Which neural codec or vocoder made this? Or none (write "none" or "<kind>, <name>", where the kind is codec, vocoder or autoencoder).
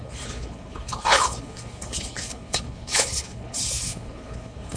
codec, HILCodec